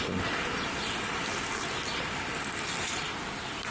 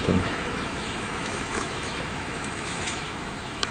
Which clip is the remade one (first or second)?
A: second